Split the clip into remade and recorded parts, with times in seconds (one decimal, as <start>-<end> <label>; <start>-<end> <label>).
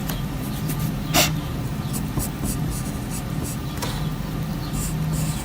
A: 0.0-5.4 recorded